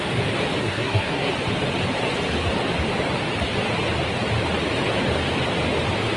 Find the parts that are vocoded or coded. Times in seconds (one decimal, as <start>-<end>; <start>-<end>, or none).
0.6-1.3